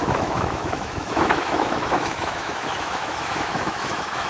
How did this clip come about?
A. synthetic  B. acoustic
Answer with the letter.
A